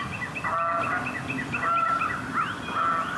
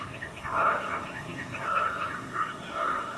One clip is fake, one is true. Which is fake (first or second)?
second